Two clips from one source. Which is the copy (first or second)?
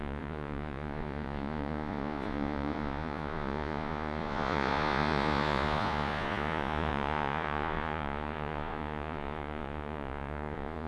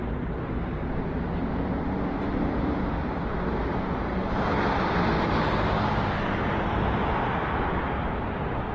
first